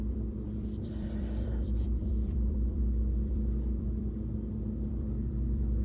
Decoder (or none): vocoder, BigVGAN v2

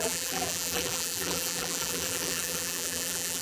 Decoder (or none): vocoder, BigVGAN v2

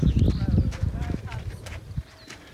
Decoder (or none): none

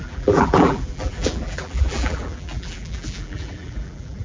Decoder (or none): vocoder, BigVGAN v2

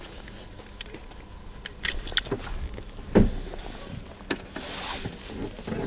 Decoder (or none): none